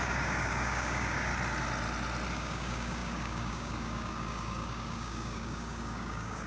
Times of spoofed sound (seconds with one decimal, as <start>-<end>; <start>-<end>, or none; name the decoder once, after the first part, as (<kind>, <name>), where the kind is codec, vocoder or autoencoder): 0.0-1.3 (codec, DAC); 2.3-6.5

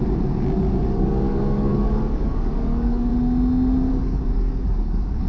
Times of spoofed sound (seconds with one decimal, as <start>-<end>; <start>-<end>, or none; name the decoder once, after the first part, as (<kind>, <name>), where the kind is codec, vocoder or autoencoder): 0.9-3.1 (codec, DAC); 3.9-5.3